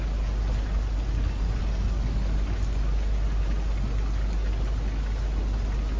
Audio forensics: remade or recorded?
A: recorded